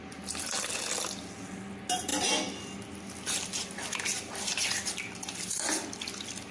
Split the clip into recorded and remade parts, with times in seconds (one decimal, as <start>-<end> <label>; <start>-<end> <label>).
0.0-6.5 recorded